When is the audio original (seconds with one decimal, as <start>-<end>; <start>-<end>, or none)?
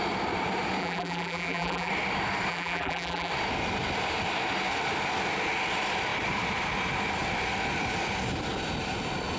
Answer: 0.0-0.8; 1.9-2.5; 3.3-9.4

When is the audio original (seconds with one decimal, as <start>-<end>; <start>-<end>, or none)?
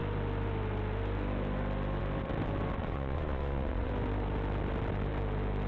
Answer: 0.0-2.8; 3.9-5.7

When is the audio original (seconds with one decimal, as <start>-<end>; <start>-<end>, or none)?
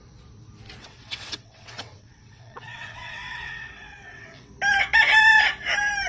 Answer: 0.0-0.8; 4.5-6.1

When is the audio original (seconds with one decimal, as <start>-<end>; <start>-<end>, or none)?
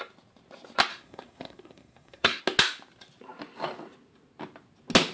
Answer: 0.0-0.9; 2.4-5.1